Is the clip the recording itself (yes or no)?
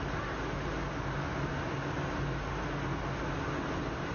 yes